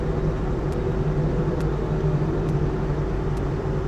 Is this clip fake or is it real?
fake